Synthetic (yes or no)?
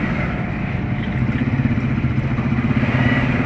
no